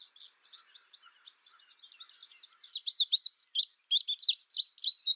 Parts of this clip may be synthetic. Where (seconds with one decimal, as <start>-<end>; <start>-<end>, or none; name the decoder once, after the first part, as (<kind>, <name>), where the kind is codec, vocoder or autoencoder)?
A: none